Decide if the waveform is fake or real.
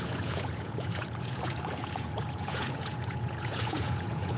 fake